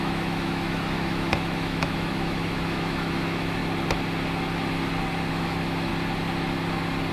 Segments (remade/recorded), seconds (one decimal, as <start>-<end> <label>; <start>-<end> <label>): 0.0-3.6 remade; 3.6-5.3 recorded; 5.3-5.9 remade; 5.9-7.1 recorded